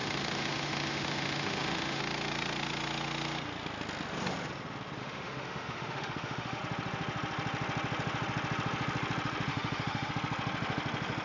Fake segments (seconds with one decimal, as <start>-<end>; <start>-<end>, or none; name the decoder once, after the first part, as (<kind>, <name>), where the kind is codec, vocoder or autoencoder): 0.0-2.0 (autoencoder, DAC-VAE); 5.0-6.6; 9.5-10.1